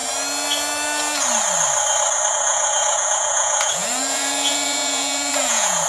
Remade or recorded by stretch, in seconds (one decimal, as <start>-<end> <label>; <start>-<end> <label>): 0.0-2.3 recorded; 2.3-5.9 remade